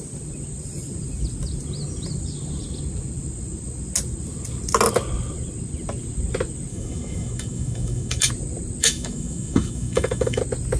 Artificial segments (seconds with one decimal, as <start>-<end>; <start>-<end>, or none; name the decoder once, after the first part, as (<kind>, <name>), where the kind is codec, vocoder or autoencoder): 6.7-8.3 (autoencoder, DAC-VAE); 8.8-10.4